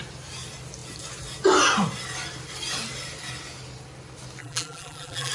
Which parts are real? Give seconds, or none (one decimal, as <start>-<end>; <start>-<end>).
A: 0.0-4.4

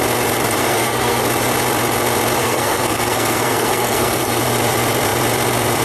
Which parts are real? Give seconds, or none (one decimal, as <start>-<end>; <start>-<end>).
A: 0.0-0.6; 1.2-2.4; 4.4-5.8

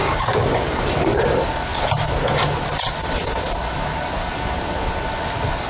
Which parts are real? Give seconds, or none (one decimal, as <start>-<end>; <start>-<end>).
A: 0.7-5.7

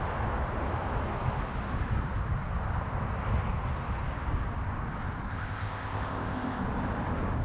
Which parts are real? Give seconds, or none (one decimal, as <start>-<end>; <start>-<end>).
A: 0.0-5.3; 6.6-7.4